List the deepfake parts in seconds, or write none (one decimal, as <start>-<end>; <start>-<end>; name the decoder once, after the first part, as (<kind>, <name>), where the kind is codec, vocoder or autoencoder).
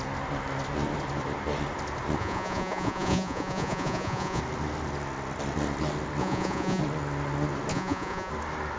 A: 2.2-4.4 (vocoder, Vocos); 6.2-6.8; 7.7-8.3